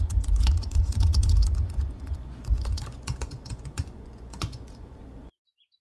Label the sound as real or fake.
fake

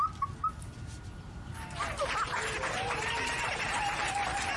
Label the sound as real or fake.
real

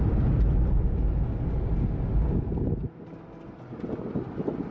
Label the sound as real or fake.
real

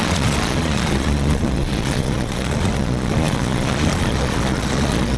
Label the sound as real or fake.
fake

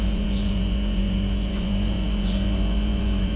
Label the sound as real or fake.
fake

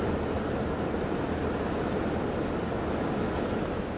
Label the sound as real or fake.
real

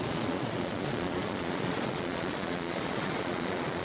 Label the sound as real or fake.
fake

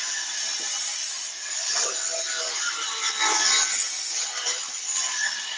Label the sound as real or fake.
real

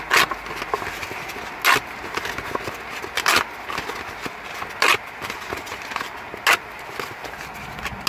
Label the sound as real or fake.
real